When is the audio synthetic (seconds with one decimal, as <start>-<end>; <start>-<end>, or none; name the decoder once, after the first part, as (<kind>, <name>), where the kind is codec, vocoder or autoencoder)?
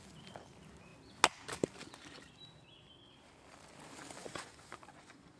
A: 4.2-5.4 (vocoder, Vocos)